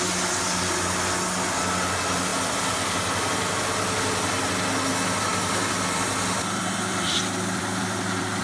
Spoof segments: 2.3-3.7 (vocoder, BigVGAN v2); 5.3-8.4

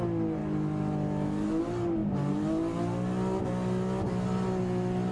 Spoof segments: none

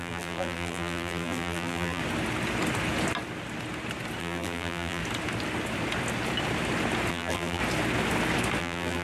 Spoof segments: 0.0-2.0 (vocoder, BigVGAN v2); 4.2-5.0; 7.1-7.6; 8.6-9.0

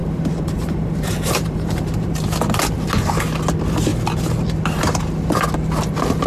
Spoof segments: 0.0-1.8 (vocoder, BigVGAN v2)

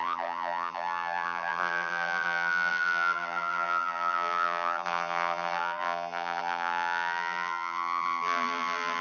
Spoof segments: 0.0-9.0 (vocoder, BigVGAN v2)

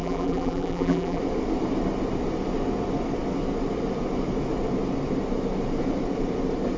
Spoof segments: 0.0-1.2 (vocoder, BigVGAN v2)